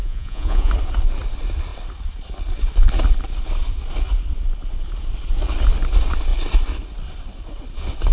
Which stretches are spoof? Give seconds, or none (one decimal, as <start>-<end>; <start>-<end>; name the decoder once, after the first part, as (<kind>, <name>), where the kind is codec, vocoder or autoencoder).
0.0-0.7 (vocoder, Vocos)